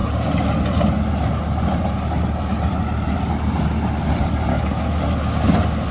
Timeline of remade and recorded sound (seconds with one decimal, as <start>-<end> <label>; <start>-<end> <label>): 0.0-4.5 recorded; 4.5-5.0 remade; 5.0-5.9 recorded